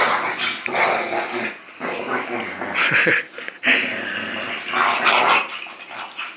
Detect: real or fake real